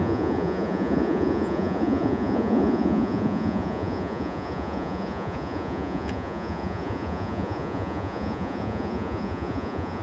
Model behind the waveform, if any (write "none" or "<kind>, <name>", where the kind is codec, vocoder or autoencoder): vocoder, Vocos